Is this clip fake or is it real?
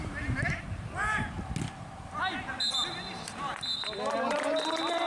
real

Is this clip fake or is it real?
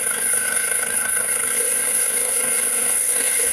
fake